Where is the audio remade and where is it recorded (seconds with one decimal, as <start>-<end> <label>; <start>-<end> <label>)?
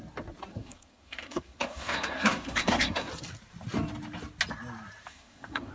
0.0-0.5 recorded; 0.5-3.1 remade; 3.1-5.1 recorded; 5.1-5.7 remade